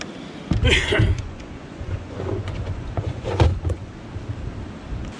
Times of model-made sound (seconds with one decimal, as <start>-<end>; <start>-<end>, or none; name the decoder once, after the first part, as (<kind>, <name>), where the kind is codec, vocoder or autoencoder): 0.8-3.9 (vocoder, Vocos)